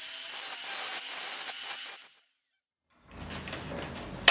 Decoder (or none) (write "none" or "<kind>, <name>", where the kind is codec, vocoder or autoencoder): none